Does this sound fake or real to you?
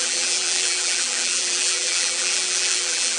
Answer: fake